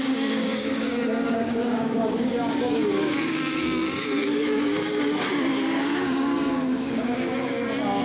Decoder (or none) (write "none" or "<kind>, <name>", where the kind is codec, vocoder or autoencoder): codec, DAC